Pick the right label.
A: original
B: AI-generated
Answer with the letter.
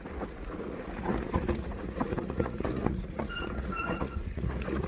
B